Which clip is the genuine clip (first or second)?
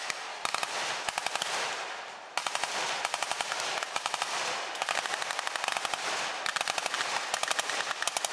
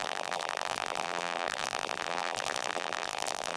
first